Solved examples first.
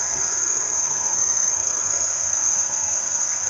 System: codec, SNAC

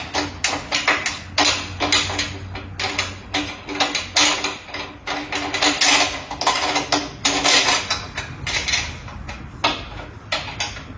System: none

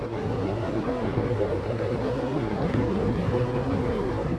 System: codec, SNAC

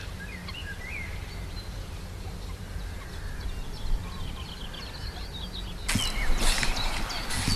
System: none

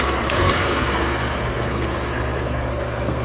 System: codec, SNAC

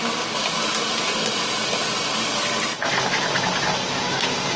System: none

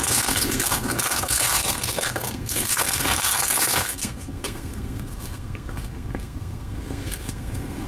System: codec, SNAC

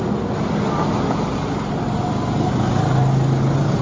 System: none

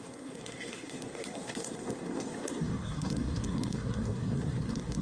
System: codec, SNAC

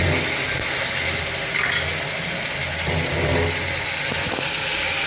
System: none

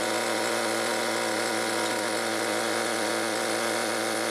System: none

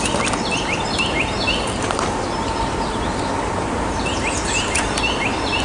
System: none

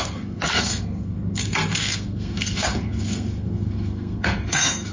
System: codec, SNAC